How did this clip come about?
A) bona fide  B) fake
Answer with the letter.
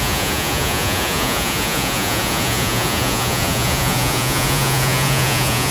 B